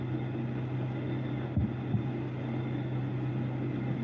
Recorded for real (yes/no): yes